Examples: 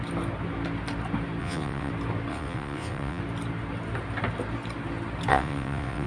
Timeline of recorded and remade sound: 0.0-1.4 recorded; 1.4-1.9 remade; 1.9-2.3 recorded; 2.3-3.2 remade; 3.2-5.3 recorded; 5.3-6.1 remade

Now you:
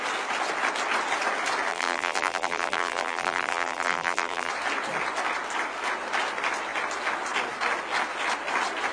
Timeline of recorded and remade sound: 0.0-1.7 recorded; 1.7-4.5 remade; 4.5-8.9 recorded

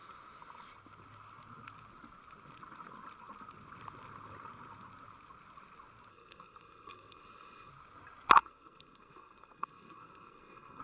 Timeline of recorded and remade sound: 0.0-6.1 recorded; 6.1-7.7 remade; 7.7-8.4 recorded; 8.4-10.8 remade

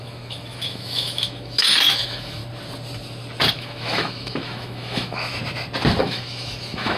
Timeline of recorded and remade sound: 0.0-2.4 remade; 2.4-3.5 recorded; 3.5-5.4 remade; 5.4-6.0 recorded; 6.0-7.0 remade

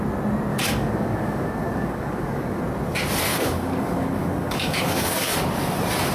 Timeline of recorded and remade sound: 0.0-0.5 recorded; 0.5-2.6 remade; 2.6-3.3 recorded; 3.3-5.3 remade; 5.3-6.1 recorded